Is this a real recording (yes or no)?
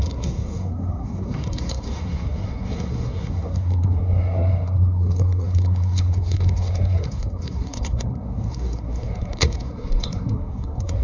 no